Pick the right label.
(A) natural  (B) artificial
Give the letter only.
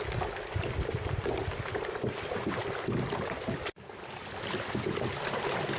A